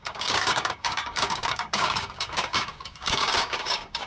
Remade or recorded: remade